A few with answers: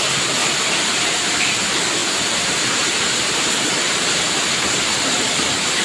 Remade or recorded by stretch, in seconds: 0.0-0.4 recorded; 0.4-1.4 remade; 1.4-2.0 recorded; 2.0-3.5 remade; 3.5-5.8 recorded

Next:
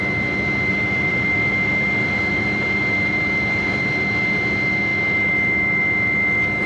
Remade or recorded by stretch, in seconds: 0.0-0.7 recorded; 0.7-3.8 remade; 3.8-6.7 recorded